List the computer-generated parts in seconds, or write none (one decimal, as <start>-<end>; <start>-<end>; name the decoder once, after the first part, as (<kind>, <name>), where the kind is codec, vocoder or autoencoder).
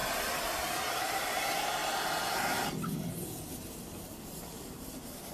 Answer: 1.0-1.8 (vocoder, BigVGAN v2); 4.4-5.3